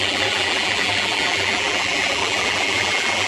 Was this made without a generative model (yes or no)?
no